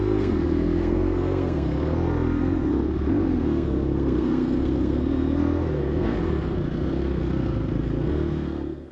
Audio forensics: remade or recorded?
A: remade